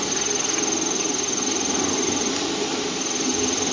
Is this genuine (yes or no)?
yes